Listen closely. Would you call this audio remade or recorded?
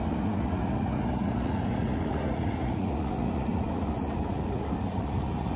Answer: remade